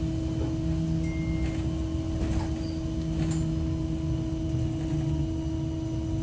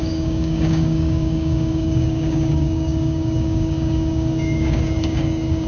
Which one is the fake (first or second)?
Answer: second